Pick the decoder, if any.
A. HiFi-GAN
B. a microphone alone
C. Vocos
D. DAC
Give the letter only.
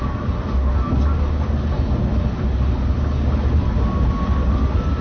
B